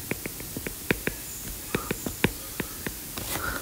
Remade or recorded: remade